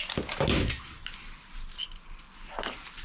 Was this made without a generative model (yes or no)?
yes